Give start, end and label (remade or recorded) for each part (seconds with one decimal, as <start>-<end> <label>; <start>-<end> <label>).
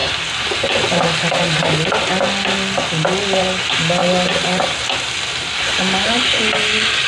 0.0-7.1 recorded